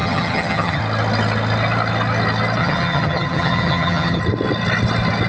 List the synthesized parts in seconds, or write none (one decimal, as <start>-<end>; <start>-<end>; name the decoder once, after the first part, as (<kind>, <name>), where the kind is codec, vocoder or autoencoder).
0.0-0.8 (vocoder, HiFi-GAN); 2.6-4.2